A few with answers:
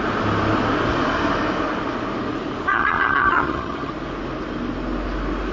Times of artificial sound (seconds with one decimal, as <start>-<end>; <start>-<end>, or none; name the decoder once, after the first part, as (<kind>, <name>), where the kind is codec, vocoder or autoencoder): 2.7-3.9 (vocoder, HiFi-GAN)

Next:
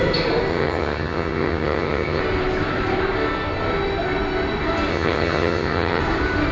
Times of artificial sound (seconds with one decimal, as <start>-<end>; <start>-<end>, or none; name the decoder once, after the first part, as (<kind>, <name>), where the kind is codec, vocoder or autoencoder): 0.5-2.2 (vocoder, HiFi-GAN); 4.9-6.0

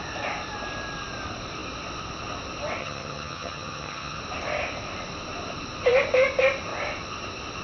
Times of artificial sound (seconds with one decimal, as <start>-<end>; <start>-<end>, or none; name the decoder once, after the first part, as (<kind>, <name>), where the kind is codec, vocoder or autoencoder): 2.8-4.2 (vocoder, HiFi-GAN)

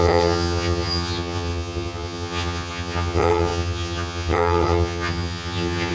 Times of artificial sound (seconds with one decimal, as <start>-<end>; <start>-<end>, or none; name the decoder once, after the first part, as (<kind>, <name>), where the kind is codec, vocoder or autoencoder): 0.0-5.9 (vocoder, HiFi-GAN)